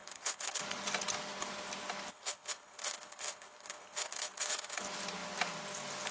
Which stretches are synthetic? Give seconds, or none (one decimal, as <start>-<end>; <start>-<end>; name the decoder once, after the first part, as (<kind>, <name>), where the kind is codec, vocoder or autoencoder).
0.0-0.6 (codec, HILCodec); 2.1-4.8